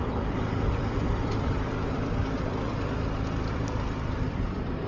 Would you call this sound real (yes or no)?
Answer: no